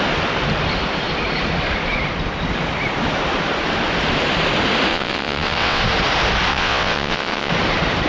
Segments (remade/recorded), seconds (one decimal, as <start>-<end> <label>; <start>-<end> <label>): 0.0-4.9 recorded; 4.9-5.8 remade; 5.8-6.5 recorded; 6.5-7.5 remade; 7.5-8.1 recorded